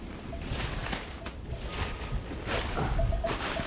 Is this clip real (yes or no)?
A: yes